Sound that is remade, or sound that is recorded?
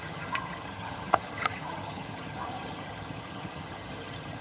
remade